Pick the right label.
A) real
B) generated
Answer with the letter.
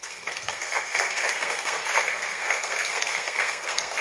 B